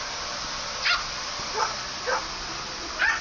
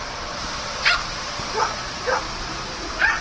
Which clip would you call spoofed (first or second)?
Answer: second